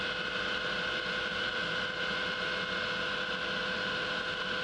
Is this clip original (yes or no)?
yes